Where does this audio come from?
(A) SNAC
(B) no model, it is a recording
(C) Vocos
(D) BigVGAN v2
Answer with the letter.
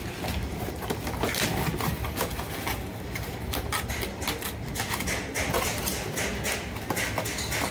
B